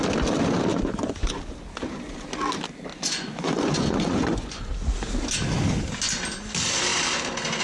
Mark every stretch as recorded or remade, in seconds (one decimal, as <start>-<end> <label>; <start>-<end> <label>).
0.0-0.7 recorded; 0.7-1.4 remade; 1.4-2.9 recorded; 2.9-4.6 remade; 4.6-7.6 recorded